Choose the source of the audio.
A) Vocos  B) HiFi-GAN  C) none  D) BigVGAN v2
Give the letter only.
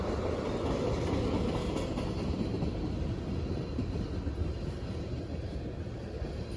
C